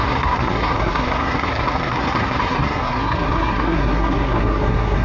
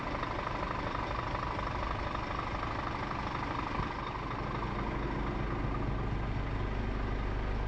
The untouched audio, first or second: second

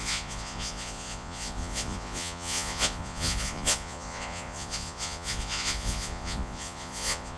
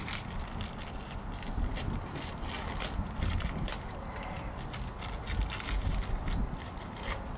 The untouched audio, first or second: second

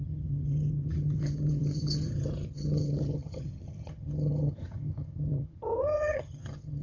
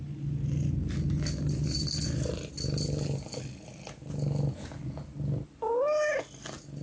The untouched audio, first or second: second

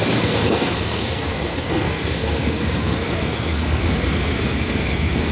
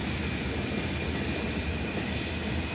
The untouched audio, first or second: second